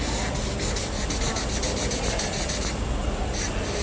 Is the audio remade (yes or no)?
no